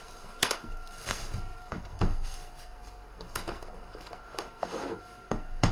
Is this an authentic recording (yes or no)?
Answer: no